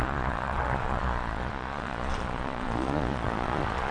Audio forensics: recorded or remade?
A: remade